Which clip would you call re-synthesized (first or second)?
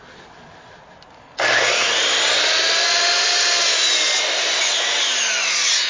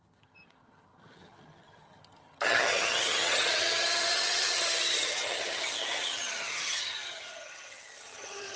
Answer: second